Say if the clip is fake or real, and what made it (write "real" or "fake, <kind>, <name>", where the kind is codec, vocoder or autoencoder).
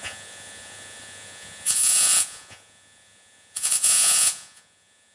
fake, vocoder, Vocos